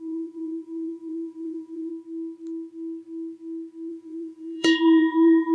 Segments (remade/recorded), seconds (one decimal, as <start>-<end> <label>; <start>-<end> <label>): 0.0-1.9 remade; 1.9-3.9 recorded; 3.9-5.5 remade